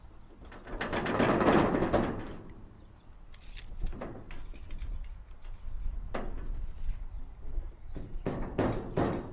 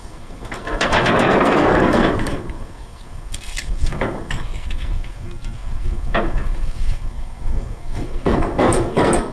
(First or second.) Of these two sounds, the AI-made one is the second